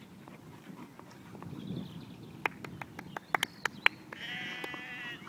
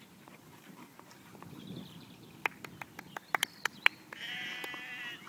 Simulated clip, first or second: second